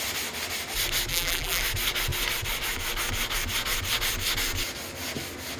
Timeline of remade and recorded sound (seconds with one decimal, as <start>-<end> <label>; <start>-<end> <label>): 0.0-1.1 recorded; 1.1-1.6 remade; 1.6-5.6 recorded

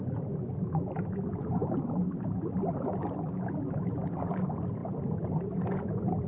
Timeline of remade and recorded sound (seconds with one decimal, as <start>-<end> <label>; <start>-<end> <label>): 0.0-6.3 recorded

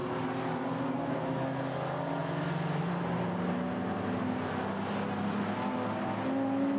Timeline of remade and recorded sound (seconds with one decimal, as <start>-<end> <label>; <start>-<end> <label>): 0.0-6.8 recorded

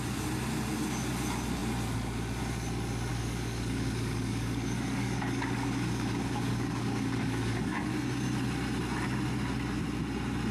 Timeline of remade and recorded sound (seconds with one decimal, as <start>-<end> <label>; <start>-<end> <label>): 0.0-3.1 recorded; 3.1-7.9 remade; 7.9-10.5 recorded

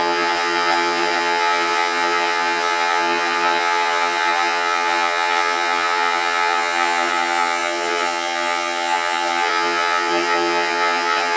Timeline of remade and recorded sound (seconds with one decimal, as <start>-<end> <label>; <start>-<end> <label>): 0.0-11.4 remade